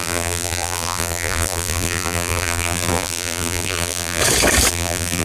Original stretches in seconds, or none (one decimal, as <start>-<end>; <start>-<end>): 4.2-4.7